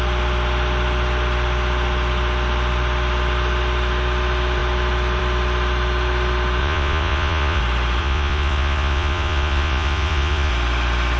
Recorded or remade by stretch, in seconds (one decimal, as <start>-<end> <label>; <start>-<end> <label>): 0.0-6.6 recorded; 6.6-7.6 remade; 7.6-8.0 recorded; 8.0-10.5 remade; 10.5-11.2 recorded